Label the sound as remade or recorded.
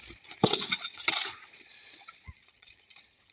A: remade